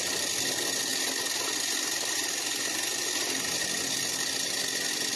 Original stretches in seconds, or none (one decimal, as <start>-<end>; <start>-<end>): 0.0-5.2